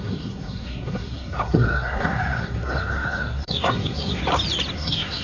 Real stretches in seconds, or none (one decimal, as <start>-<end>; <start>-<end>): 4.2-4.7